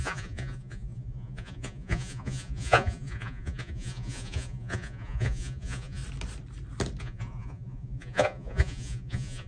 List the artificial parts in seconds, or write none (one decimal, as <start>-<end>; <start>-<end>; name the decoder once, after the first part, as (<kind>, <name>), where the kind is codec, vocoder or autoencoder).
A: 0.0-6.0 (vocoder, Vocos); 7.0-9.5